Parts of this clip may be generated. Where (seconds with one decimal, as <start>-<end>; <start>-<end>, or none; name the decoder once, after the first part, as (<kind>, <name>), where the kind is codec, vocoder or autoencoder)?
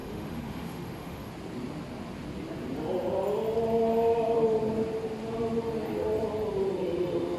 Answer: 0.0-1.3 (autoencoder, DAC-VAE)